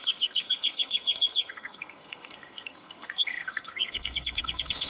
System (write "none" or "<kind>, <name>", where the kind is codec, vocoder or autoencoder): codec, SNAC